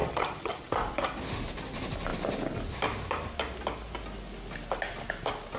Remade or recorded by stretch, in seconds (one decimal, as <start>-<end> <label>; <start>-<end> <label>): 0.0-0.7 remade; 0.7-5.6 recorded